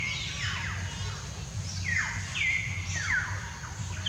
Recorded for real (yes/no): yes